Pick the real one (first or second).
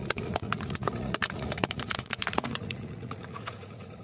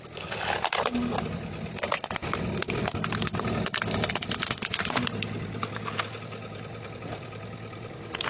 second